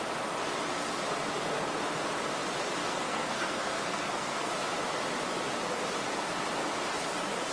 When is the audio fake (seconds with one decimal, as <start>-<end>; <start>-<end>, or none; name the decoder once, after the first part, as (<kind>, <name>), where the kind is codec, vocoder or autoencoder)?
2.8-4.5 (codec, SNAC)